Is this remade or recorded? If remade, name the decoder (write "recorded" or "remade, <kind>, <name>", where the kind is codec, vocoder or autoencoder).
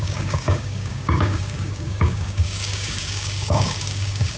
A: remade, codec, DAC